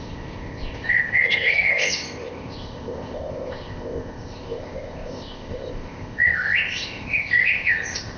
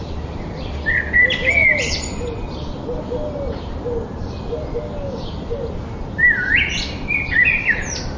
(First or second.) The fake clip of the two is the first